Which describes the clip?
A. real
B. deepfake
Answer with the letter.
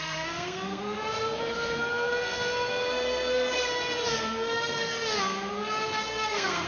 B